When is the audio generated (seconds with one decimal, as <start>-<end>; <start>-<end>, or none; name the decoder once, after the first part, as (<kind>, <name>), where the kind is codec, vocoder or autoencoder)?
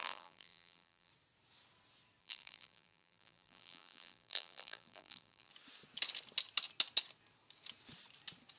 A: 0.0-1.1 (vocoder, BigVGAN v2); 2.2-5.5